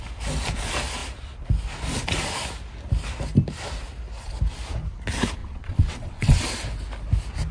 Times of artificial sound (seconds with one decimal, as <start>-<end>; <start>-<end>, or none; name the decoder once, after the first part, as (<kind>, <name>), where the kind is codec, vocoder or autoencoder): 5.4-6.4 (vocoder, WaveNeXt)